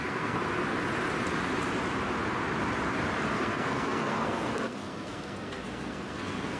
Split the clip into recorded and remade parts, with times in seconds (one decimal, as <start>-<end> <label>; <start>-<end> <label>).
0.0-0.4 remade; 0.4-3.3 recorded; 3.3-6.6 remade